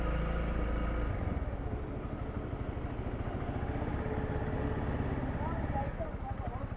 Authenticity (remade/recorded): recorded